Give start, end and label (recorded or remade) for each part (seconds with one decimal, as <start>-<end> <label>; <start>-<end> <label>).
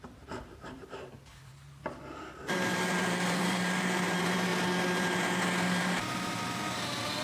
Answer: 0.0-4.5 remade; 4.5-5.8 recorded; 5.8-7.2 remade